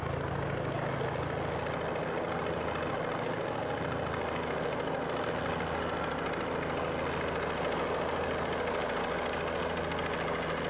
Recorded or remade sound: recorded